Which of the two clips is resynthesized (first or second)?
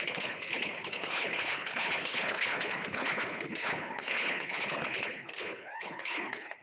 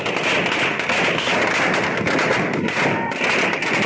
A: first